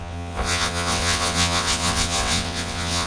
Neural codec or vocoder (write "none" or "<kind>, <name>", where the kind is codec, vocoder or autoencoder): vocoder, WaveNeXt